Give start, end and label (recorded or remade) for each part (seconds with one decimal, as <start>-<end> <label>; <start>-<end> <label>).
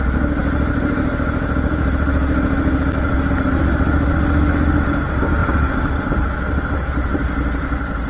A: 0.0-8.1 recorded